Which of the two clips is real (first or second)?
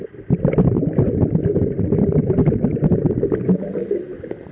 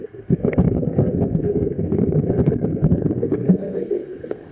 first